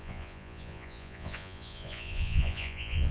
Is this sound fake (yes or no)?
yes